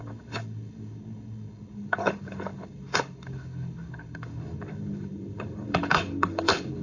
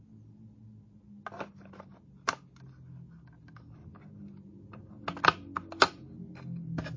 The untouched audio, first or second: second